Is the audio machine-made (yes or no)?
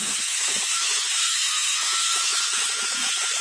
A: yes